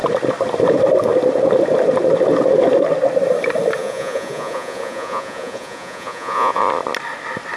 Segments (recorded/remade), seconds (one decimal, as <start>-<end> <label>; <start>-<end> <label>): 0.0-3.8 recorded; 3.8-6.6 remade; 6.6-7.6 recorded

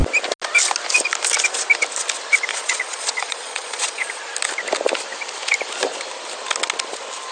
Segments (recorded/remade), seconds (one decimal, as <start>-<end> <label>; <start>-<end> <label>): 0.0-2.5 recorded; 2.5-4.2 remade; 4.2-7.3 recorded

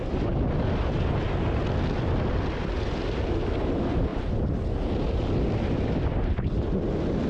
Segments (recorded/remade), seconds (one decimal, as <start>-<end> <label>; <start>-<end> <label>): 0.0-7.3 recorded